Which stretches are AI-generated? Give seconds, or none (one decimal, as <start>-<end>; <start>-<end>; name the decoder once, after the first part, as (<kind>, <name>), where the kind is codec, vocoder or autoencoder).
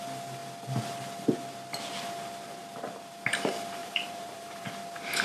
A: 3.8-4.7 (vocoder, BigVGAN v2)